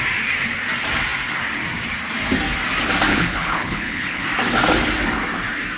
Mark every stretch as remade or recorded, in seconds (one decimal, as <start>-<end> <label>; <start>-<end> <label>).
0.0-3.1 recorded; 3.1-4.2 remade; 4.2-5.8 recorded